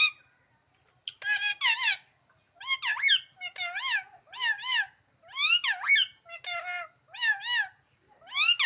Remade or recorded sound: recorded